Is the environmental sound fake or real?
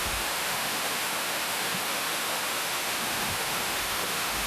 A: fake